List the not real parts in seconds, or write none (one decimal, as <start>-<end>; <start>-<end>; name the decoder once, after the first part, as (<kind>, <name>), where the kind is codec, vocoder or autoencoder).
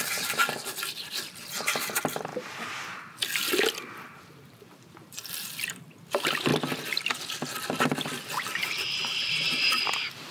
0.0-0.4 (vocoder, BigVGAN v2); 1.1-2.3; 5.3-6.5; 9.3-10.3